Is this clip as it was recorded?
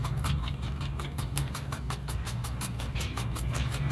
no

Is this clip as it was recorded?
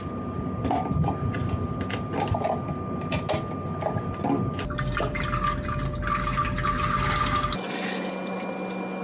yes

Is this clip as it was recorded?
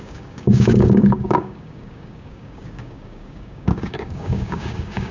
no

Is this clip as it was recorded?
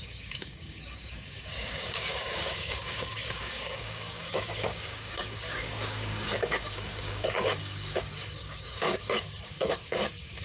no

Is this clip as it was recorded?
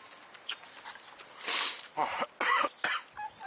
yes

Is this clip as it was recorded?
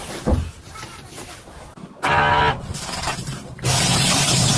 yes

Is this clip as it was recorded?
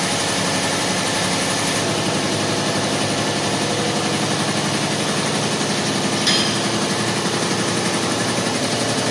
yes